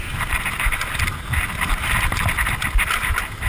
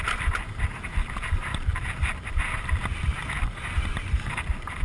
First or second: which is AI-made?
second